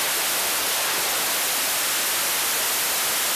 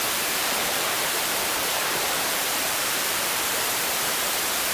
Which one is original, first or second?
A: first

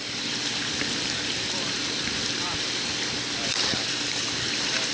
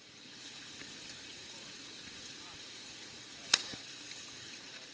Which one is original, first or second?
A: first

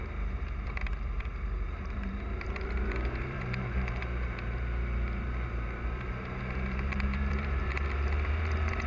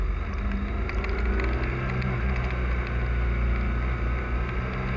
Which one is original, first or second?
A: second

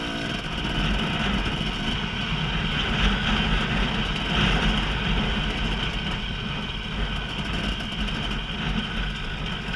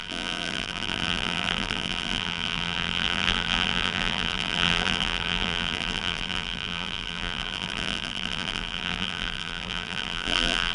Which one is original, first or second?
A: first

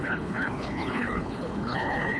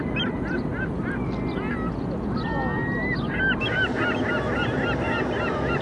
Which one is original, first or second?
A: second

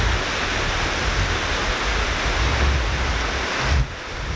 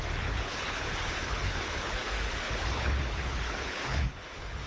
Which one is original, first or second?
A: first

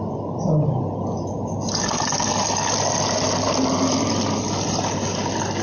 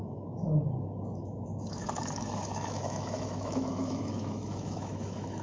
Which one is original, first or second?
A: first